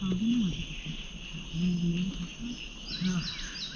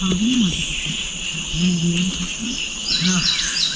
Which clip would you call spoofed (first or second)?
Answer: second